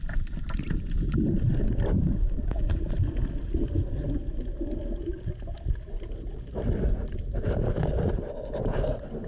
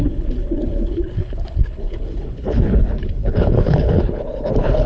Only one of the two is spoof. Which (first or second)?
second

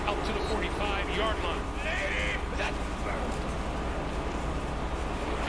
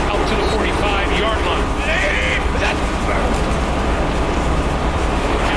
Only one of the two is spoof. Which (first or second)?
second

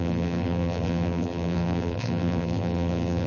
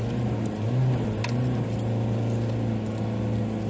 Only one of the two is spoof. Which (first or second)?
first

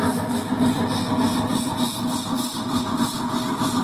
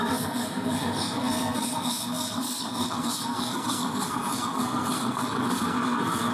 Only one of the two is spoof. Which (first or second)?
second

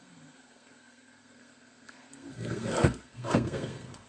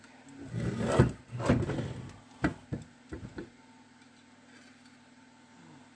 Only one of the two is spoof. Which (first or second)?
first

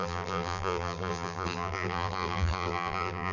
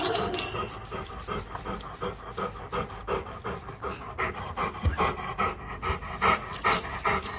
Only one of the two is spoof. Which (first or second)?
first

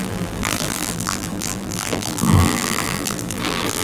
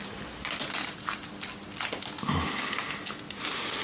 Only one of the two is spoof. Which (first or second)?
first